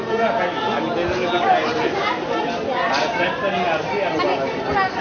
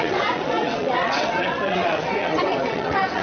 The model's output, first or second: second